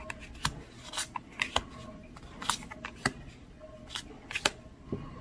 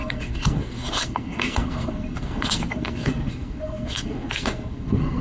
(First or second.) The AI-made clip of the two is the second